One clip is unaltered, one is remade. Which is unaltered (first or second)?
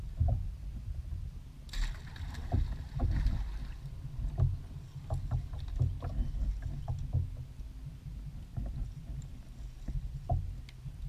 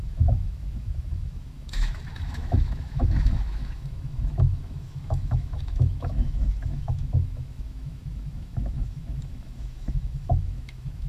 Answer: first